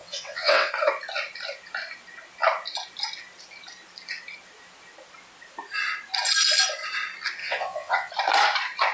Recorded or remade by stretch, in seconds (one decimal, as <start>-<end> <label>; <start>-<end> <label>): 0.0-0.7 remade; 0.7-7.4 recorded; 7.4-8.1 remade; 8.1-8.9 recorded